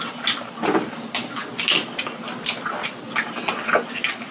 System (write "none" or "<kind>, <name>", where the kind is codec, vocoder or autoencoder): none